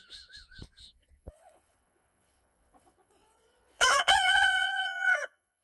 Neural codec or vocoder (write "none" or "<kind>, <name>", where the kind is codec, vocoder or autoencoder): vocoder, Vocos